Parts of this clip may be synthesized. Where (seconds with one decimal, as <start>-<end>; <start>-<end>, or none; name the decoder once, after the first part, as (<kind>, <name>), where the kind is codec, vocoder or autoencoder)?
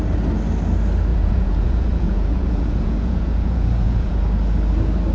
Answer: 1.1-4.2 (vocoder, Vocos)